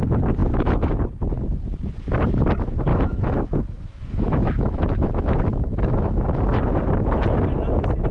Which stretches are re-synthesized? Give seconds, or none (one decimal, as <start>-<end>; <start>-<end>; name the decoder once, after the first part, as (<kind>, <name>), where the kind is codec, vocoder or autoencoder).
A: 0.4-0.9 (autoencoder, DAC-VAE); 2.9-6.4